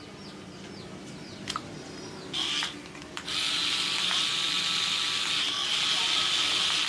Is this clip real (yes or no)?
yes